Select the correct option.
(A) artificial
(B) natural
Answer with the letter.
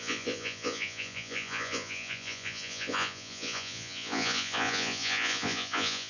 A